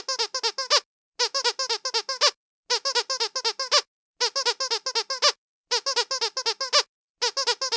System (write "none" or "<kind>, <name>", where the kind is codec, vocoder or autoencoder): none